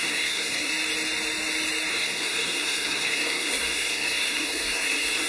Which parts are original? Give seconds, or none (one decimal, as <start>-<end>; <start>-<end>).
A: 0.7-1.9